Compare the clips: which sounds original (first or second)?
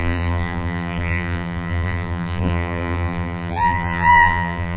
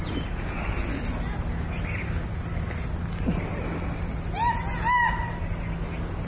second